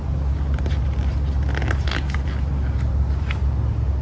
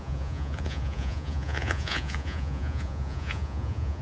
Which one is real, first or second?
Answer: first